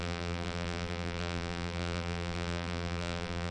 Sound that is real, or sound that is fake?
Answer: fake